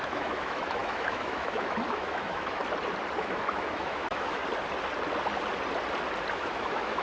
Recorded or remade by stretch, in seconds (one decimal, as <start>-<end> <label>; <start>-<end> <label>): 0.0-2.6 remade; 2.6-3.2 recorded; 3.2-4.4 remade; 4.4-6.3 recorded; 6.3-7.0 remade